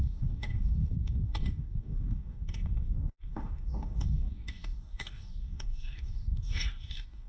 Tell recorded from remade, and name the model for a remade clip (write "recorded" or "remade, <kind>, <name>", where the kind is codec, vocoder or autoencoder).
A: remade, codec, DAC